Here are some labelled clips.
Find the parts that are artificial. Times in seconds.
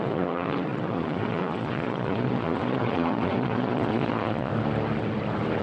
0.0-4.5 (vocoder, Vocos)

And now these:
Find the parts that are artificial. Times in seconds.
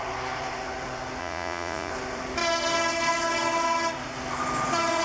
1.2-1.9 (vocoder, Vocos)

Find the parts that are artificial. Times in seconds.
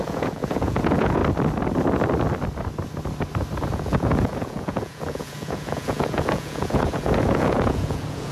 0.0-1.2 (vocoder, Vocos); 3.7-8.3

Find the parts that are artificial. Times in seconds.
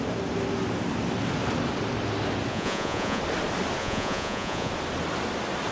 2.5-3.2 (vocoder, Vocos); 3.8-4.7